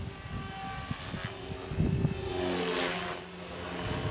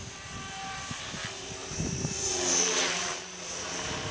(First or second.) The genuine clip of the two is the first